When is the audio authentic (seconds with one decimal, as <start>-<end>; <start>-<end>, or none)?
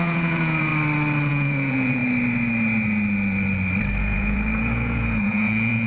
0.7-1.3; 2.0-4.0